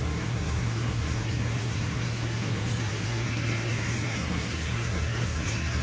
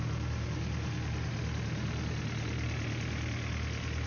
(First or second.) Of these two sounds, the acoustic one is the second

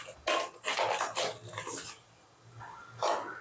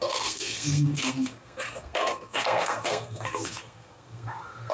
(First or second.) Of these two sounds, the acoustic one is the first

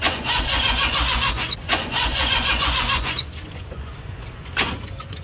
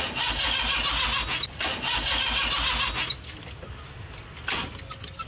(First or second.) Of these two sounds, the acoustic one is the second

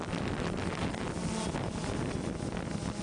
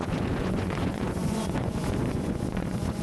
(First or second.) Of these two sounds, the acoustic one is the first